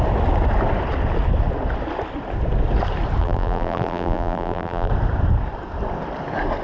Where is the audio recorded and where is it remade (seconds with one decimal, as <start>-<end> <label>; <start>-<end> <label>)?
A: 0.0-3.2 recorded; 3.2-4.9 remade; 4.9-6.6 recorded